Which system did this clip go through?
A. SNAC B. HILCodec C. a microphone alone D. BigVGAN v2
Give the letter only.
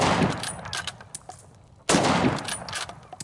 C